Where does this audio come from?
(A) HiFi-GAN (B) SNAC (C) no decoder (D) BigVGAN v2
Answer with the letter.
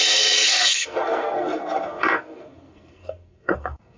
B